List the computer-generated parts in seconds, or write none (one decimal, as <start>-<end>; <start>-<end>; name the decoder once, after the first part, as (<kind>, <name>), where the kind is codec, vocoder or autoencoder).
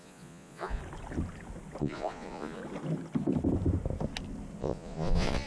0.0-0.8 (vocoder, Vocos); 1.8-2.6; 4.6-5.5